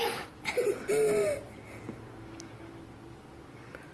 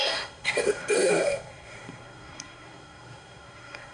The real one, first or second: first